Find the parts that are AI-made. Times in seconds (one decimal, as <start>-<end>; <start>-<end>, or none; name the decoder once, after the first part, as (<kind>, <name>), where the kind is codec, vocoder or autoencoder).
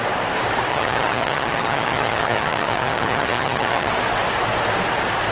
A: 0.7-3.9 (vocoder, HiFi-GAN)